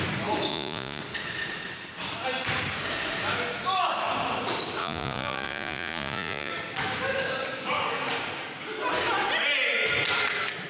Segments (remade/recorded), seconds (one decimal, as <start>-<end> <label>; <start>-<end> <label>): 0.0-0.5 recorded; 0.5-1.0 remade; 1.0-4.8 recorded; 4.8-6.5 remade; 6.5-10.7 recorded